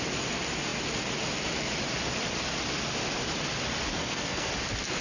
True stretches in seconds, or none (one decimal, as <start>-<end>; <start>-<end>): 0.0-3.9; 4.5-5.0